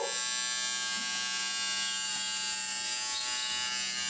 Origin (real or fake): real